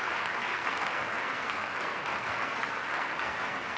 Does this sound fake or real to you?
fake